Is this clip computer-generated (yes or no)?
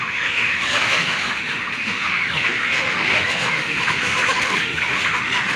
yes